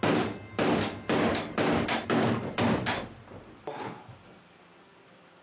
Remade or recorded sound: recorded